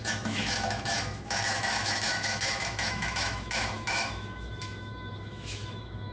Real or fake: fake